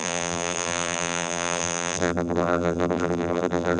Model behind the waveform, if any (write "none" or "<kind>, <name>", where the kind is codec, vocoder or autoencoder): vocoder, BigVGAN v2